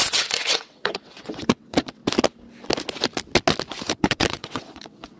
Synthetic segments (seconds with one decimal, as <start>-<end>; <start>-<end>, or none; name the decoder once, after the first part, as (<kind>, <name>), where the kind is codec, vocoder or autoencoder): 0.0-2.0 (vocoder, WaveNeXt); 4.0-5.2